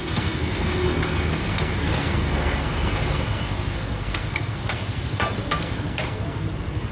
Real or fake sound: fake